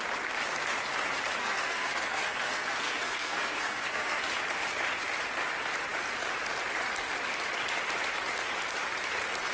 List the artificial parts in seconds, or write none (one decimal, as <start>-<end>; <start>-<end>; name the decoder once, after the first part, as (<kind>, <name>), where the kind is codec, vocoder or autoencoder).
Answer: 1.4-4.3 (codec, SNAC)